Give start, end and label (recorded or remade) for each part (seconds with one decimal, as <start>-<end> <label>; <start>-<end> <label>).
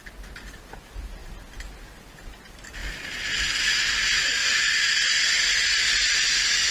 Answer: 0.0-6.7 recorded